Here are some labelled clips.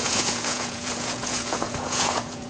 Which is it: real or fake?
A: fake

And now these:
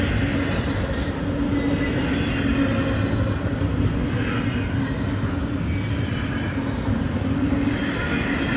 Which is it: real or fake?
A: real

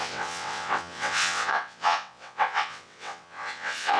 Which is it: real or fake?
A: fake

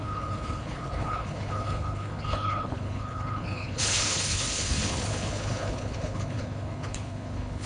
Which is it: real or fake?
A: fake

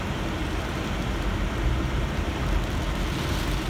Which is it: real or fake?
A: real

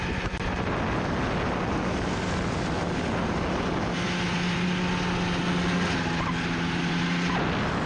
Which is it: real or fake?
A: real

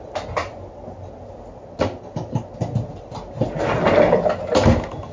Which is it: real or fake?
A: real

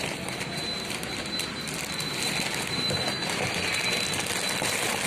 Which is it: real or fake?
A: real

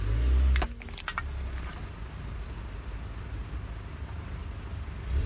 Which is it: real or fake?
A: real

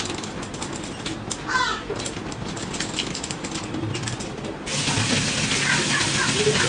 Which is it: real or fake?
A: real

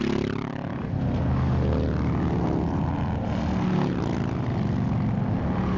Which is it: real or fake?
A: real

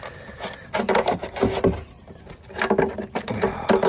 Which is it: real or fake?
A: real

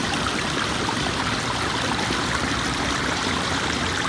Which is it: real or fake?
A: fake